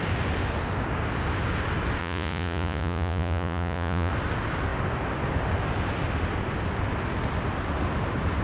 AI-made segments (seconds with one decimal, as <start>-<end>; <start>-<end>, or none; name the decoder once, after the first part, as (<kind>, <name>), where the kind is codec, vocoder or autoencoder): 2.0-4.1 (vocoder, Vocos)